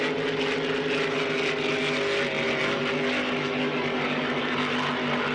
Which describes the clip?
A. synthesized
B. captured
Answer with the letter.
B